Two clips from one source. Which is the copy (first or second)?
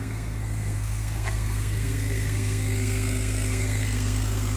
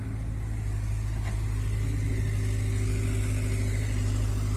first